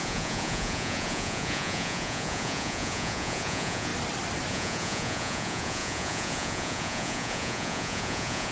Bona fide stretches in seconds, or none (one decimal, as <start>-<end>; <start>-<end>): 3.9-4.5